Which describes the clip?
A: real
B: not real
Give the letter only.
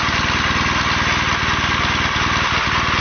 A